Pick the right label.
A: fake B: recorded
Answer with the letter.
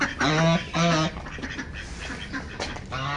B